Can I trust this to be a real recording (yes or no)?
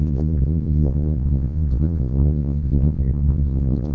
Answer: no